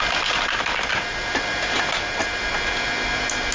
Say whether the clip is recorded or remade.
recorded